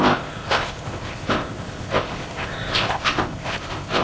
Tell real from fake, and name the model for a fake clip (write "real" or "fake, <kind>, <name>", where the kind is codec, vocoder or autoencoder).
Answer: fake, codec, ZipCodec